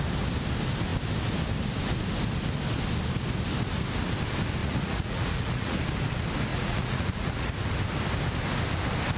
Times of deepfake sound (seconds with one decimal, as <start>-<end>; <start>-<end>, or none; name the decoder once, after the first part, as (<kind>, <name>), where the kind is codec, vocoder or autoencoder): 4.6-5.8 (vocoder, Vocos); 6.5-7.5